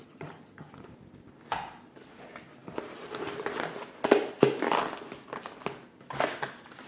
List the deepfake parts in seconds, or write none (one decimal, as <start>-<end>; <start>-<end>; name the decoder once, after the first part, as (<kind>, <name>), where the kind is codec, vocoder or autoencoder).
0.0-0.7 (vocoder, HiFi-GAN)